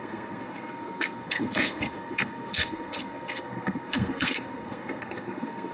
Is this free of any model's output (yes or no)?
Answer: no